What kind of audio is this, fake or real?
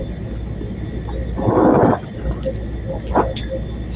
real